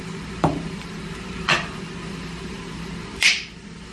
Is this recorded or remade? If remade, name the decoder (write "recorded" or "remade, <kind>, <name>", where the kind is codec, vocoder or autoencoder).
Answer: remade, vocoder, BigVGAN v2